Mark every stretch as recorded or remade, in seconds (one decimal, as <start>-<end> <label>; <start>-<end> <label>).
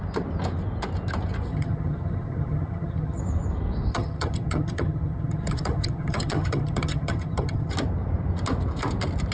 0.0-1.5 recorded; 1.5-3.2 remade; 3.2-3.9 recorded; 3.9-7.7 remade; 7.7-9.3 recorded